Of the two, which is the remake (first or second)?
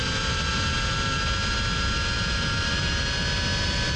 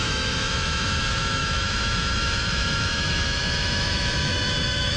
second